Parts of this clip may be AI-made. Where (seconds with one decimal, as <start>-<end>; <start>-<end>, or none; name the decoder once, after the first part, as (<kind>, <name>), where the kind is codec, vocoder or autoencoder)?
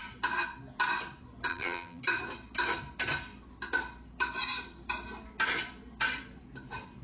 1.5-2.0 (vocoder, BigVGAN v2)